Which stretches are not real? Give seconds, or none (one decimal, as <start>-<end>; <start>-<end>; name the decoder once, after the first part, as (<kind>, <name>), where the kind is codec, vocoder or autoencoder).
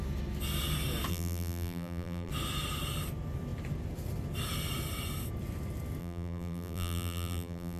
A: 1.1-2.3 (vocoder, BigVGAN v2); 6.0-7.8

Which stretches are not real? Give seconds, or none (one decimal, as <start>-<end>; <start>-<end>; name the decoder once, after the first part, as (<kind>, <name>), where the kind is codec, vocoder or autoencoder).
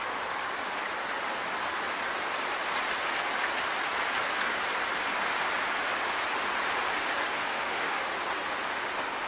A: 7.3-8.0 (autoencoder, DAC-VAE)